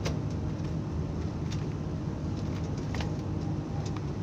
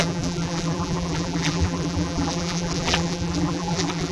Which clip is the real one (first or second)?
first